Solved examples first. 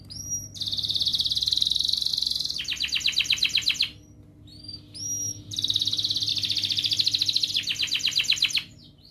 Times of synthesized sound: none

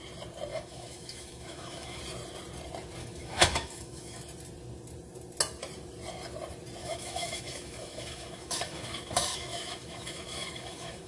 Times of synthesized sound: 0.5-2.0 (autoencoder, DAC-VAE); 3.0-4.2; 6.8-11.1

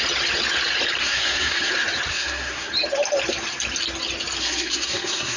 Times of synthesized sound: 1.0-1.7 (codec, SNAC); 2.1-2.7; 4.4-5.4

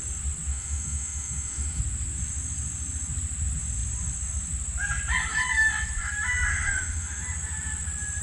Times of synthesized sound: 0.5-1.8 (autoencoder, DAC-VAE); 6.5-7.2

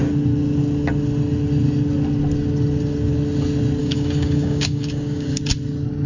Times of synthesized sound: 3.8-5.4 (codec, DAC)

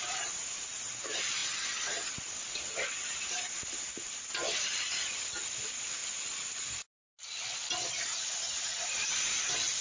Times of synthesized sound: 0.0-1.4 (vocoder, BigVGAN v2); 2.9-6.0; 8.6-9.8